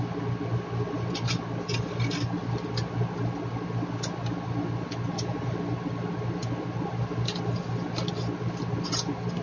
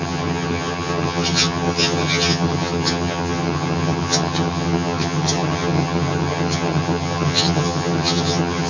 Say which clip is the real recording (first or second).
first